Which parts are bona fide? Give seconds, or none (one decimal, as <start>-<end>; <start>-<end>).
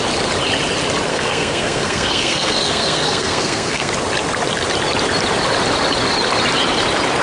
0.0-1.1; 3.9-7.2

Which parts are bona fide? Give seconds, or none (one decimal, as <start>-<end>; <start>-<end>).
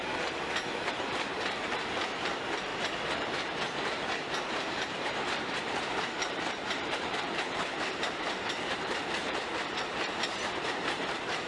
2.7-4.5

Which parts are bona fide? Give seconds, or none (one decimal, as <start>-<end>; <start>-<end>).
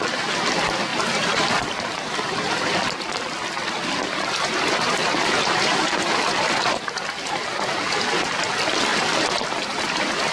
0.0-10.3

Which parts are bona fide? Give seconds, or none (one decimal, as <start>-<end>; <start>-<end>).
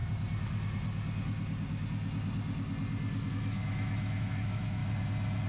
0.0-3.3; 4.8-5.5